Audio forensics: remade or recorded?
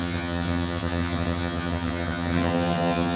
remade